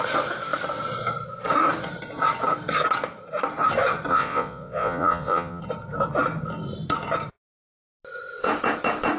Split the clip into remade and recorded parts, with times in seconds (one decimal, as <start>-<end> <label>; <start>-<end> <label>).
0.0-4.1 recorded; 4.1-5.6 remade; 5.6-9.2 recorded